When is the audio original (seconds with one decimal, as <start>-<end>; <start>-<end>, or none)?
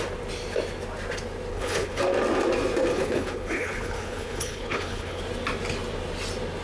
0.0-1.5; 2.0-2.9; 5.2-6.6